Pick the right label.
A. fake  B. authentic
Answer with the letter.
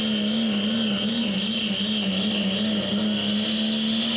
B